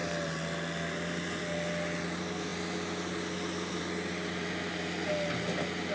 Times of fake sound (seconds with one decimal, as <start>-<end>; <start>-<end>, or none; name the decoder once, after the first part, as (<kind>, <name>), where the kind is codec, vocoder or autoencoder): none